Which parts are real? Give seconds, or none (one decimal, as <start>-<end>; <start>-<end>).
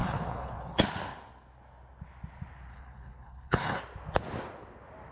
0.8-2.7; 3.8-5.1